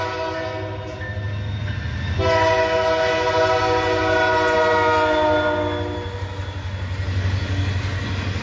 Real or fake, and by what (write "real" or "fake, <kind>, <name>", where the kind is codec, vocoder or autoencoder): real